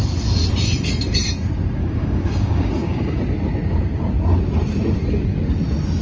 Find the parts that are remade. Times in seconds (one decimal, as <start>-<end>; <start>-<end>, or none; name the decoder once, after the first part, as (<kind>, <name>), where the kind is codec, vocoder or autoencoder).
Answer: 1.8-3.2 (codec, DAC)